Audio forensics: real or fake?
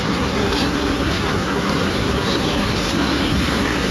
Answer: fake